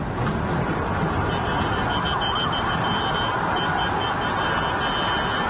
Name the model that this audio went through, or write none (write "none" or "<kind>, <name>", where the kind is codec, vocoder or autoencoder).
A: none